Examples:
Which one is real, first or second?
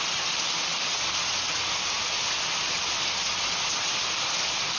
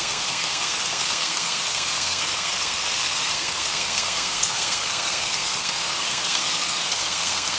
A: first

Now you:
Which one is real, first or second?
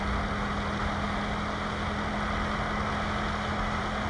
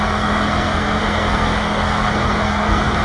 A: first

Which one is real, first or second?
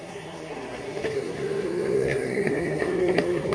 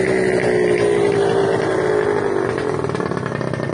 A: second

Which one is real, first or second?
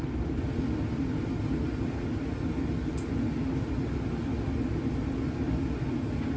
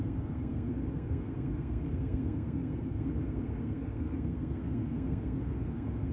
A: first